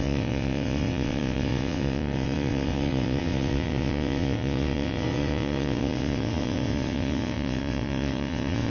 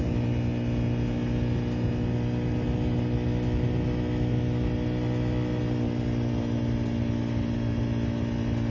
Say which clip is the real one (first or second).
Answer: second